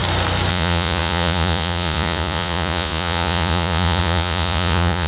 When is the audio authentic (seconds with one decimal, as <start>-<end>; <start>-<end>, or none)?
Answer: 0.0-0.5